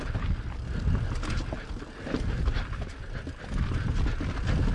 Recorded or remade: recorded